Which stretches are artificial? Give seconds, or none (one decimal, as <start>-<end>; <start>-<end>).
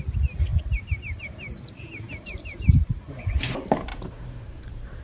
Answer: 0.5-3.5; 3.9-5.0